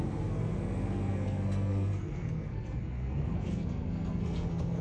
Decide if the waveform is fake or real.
fake